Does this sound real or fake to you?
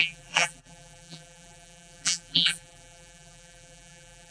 fake